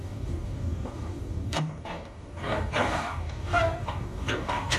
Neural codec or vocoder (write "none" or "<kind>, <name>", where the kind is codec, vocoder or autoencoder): codec, DAC